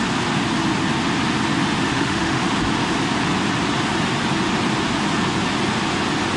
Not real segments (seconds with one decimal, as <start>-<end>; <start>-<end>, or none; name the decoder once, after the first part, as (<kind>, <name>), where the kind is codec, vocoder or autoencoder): 1.9-2.5 (autoencoder, DAC-VAE)